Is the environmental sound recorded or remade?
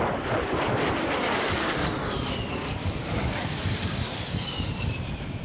remade